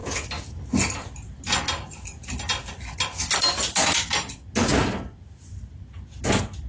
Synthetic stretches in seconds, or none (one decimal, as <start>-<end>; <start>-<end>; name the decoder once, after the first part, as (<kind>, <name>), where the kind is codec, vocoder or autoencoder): none